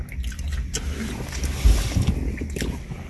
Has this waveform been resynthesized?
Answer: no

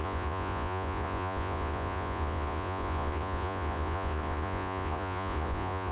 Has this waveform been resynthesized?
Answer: yes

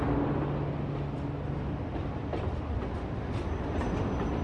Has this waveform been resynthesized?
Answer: no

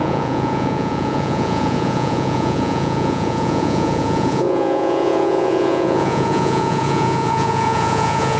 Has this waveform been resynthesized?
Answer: yes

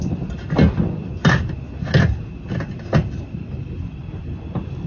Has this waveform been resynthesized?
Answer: no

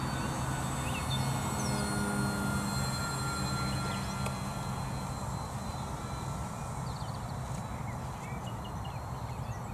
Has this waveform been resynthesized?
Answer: no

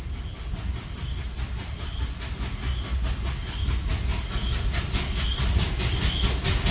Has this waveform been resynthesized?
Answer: no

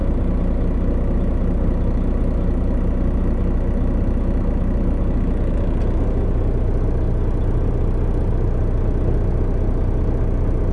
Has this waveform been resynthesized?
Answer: no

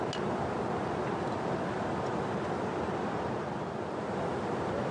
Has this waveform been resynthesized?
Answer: no